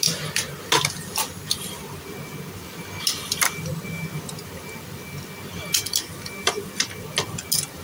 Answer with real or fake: real